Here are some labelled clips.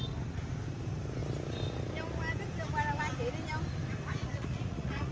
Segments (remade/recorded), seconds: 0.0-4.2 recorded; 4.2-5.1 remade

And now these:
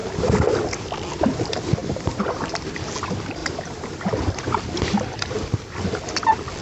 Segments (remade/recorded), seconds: 0.0-1.8 recorded; 1.8-2.9 remade; 2.9-3.4 recorded; 3.4-4.6 remade; 4.6-6.6 recorded

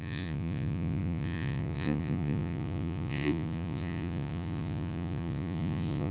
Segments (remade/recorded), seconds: 0.0-6.1 remade

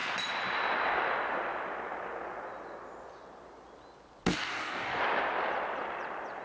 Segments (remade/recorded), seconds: 0.0-4.3 recorded; 4.3-5.0 remade; 5.0-6.4 recorded

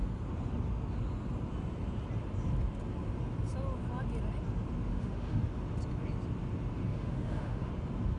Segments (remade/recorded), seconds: 0.0-4.9 recorded; 4.9-5.4 remade; 5.4-6.9 recorded; 6.9-7.7 remade; 7.7-8.2 recorded

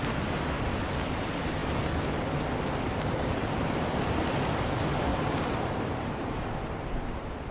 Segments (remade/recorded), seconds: 0.0-3.4 recorded; 3.4-4.1 remade; 4.1-5.1 recorded; 5.1-7.5 remade

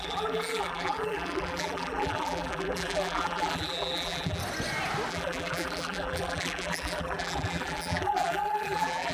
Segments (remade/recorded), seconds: 0.0-4.4 remade; 4.4-5.1 recorded; 5.1-9.1 remade

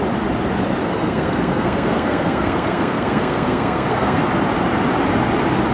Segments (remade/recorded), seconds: 0.0-0.8 recorded; 0.8-4.2 remade; 4.2-5.7 recorded